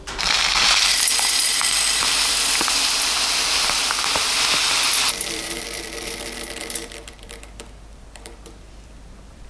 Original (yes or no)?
no